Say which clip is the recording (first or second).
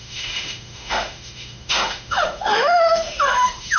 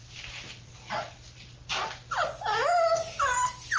second